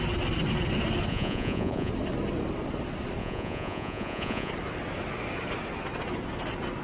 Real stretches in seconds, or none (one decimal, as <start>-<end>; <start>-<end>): 0.0-1.1; 1.9-3.2; 4.5-6.8